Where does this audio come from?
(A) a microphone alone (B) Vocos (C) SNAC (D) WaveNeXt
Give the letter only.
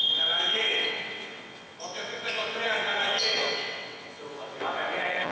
D